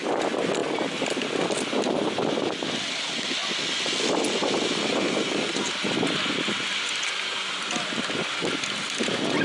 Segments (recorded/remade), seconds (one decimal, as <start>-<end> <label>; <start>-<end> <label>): 0.0-9.4 recorded